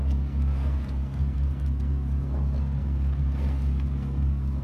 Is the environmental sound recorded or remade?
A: remade